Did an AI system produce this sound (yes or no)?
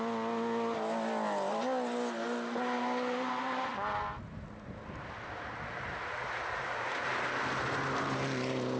no